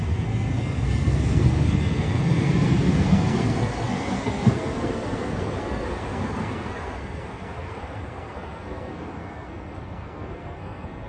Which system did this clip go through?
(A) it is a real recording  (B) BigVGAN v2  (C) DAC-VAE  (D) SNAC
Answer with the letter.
D